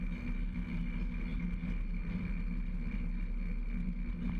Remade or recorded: recorded